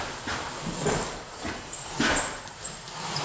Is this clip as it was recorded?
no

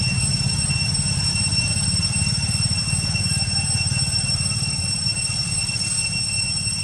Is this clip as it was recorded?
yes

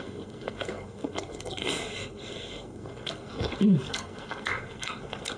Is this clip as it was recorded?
no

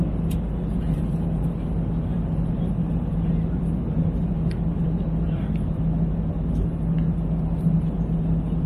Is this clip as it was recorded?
yes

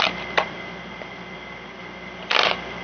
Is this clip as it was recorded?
yes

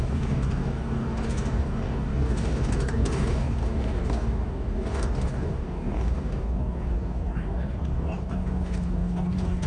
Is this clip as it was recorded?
no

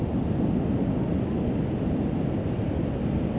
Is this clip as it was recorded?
yes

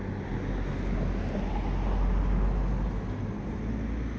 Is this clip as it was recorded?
yes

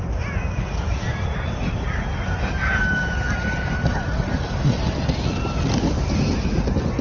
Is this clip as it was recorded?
yes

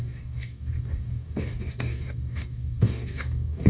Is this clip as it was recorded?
no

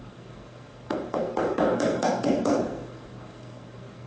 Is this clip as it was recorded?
no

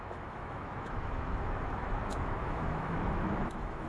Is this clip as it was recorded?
no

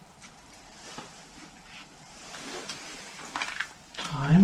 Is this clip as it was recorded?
no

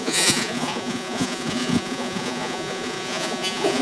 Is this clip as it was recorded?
no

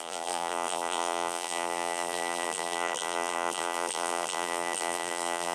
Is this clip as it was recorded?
no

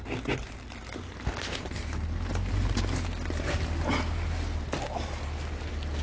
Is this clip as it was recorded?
yes